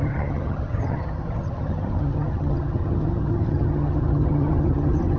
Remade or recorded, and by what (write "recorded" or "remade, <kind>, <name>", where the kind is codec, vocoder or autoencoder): remade, vocoder, HiFi-GAN